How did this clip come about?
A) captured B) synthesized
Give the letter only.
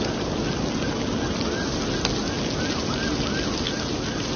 A